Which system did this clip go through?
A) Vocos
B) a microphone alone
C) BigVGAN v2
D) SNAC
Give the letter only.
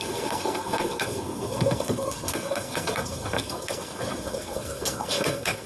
D